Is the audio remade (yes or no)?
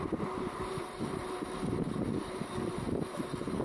no